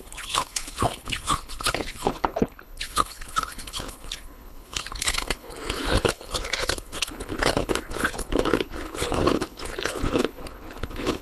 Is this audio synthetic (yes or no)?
yes